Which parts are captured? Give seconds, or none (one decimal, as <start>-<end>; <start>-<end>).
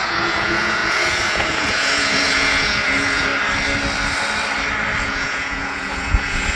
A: 3.3-5.0